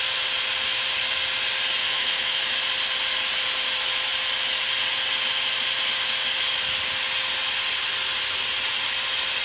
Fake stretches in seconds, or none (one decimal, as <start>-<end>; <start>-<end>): 1.8-2.4